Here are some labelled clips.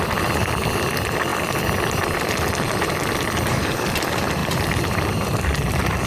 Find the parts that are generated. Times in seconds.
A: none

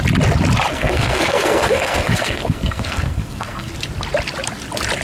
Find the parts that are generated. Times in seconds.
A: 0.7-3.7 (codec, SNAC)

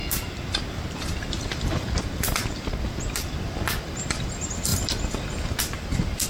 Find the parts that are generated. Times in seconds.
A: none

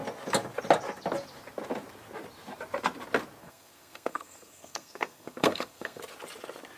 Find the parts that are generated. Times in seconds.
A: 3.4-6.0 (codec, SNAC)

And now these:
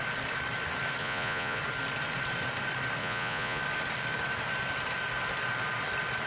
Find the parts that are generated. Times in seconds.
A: 1.0-1.6 (vocoder, Vocos); 3.0-3.6

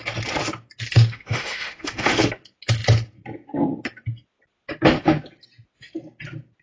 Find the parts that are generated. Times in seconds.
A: 0.9-2.2 (autoencoder, DAC-VAE)

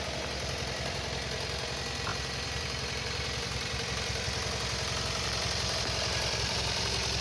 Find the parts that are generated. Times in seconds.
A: none